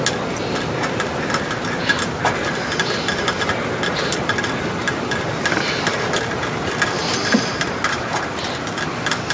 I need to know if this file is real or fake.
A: real